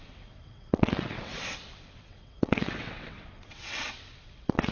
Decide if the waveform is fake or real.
fake